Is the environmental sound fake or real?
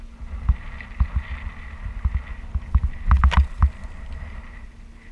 real